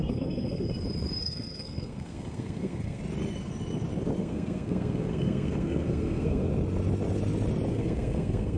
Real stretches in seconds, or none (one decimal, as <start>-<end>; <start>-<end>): 0.7-1.2; 3.0-4.2; 6.5-7.7